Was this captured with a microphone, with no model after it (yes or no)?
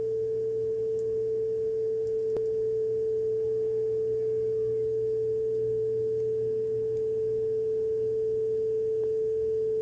yes